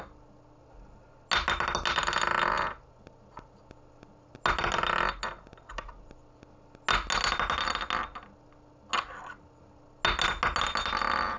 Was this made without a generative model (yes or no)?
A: yes